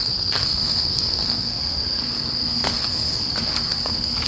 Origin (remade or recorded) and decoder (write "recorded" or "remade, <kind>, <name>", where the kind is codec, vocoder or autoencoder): remade, codec, SNAC